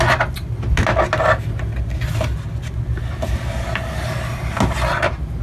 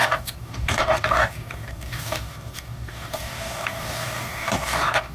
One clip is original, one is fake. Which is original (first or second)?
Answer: first